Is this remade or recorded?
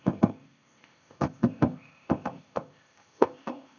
remade